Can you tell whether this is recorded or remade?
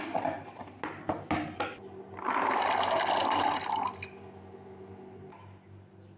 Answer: recorded